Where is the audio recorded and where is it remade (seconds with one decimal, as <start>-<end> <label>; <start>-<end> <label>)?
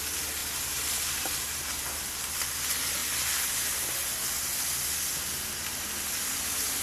0.0-6.8 recorded